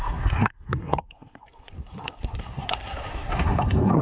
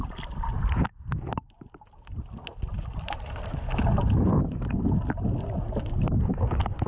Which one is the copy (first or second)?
first